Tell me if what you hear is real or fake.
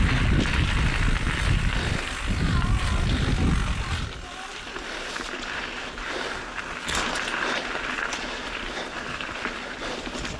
real